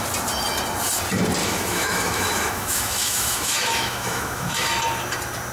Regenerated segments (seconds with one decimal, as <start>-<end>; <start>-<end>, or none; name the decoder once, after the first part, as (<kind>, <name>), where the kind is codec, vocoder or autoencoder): 1.4-4.7 (autoencoder, DAC-VAE)